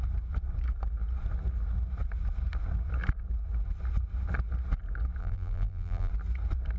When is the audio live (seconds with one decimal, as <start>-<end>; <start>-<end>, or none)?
0.0-5.2; 6.1-6.8